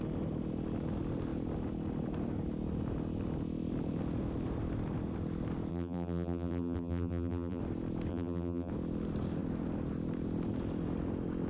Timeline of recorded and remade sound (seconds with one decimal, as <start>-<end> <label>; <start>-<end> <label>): 0.0-5.7 recorded; 5.7-7.6 remade; 7.6-8.1 recorded; 8.1-8.7 remade; 8.7-11.5 recorded